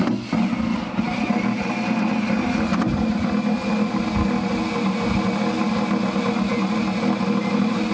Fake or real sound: real